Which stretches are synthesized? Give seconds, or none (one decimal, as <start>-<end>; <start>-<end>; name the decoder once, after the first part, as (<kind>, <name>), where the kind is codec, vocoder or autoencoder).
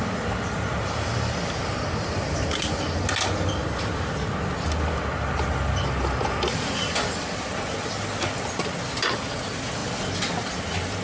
none